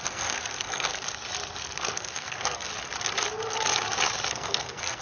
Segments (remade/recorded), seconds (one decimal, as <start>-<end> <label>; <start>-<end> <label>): 0.0-0.9 remade; 0.9-1.8 recorded; 1.8-2.7 remade; 2.7-4.3 recorded; 4.3-5.0 remade